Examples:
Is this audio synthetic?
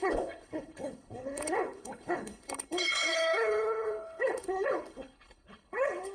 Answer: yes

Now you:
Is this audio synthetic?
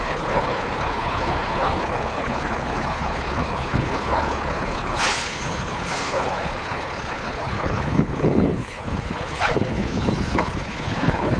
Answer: yes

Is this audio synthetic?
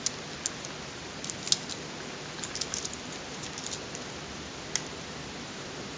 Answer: no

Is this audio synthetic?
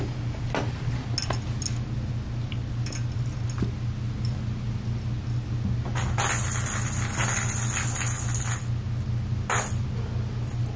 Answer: no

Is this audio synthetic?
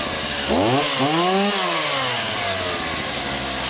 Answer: no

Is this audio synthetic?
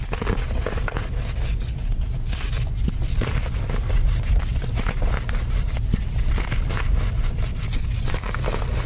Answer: no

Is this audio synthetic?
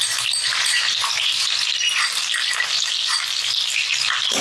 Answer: no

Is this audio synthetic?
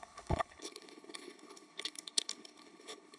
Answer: yes